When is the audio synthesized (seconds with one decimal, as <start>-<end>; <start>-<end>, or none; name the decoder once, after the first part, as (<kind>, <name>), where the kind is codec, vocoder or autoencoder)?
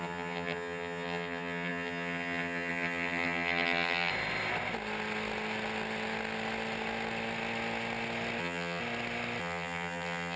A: 0.0-4.1 (vocoder, HiFi-GAN); 8.4-8.8; 9.4-10.4